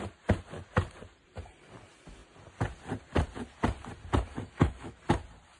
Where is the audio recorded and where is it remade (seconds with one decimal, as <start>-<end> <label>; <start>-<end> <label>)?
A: 0.0-4.3 recorded; 4.3-5.0 remade; 5.0-5.6 recorded